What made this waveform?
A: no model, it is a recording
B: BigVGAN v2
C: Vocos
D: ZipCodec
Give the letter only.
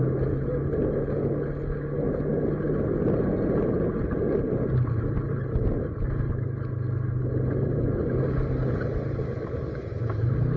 A